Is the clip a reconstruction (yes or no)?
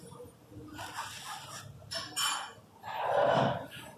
no